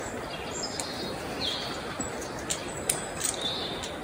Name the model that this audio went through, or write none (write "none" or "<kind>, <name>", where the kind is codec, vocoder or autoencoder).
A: none